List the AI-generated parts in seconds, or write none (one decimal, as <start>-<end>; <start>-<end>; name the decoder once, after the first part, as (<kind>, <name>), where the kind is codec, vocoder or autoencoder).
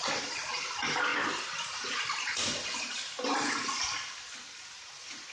none